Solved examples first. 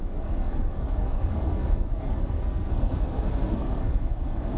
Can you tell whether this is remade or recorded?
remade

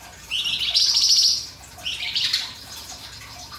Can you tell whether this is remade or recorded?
recorded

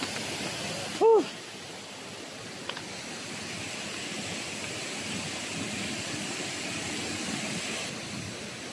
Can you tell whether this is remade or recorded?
recorded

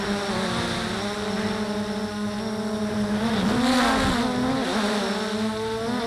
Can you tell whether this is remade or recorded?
recorded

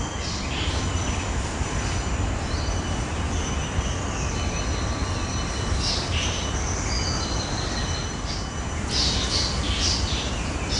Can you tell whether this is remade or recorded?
recorded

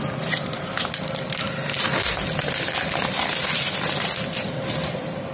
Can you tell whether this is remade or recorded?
recorded